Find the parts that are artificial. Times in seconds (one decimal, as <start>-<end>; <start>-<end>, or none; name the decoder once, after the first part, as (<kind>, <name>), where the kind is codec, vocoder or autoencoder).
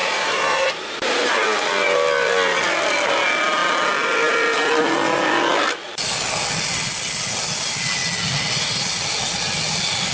0.0-1.3 (vocoder, BigVGAN v2)